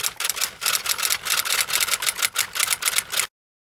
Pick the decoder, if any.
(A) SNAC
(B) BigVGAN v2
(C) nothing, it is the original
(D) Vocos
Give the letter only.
C